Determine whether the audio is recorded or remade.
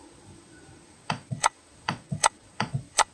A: remade